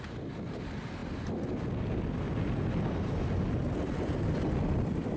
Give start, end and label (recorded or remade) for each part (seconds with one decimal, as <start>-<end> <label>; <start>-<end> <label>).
0.0-5.2 recorded